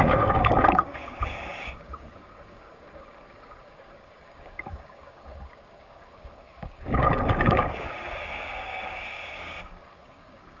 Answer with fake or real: fake